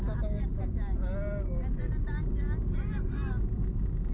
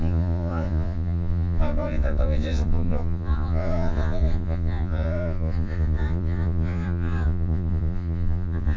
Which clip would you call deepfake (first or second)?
second